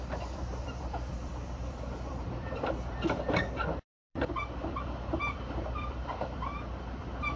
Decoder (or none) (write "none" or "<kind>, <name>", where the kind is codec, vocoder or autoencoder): vocoder, BigVGAN v2